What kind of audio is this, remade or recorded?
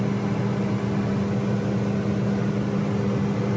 recorded